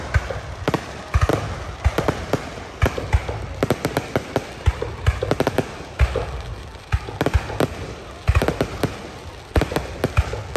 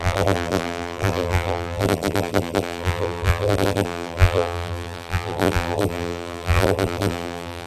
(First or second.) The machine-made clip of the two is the second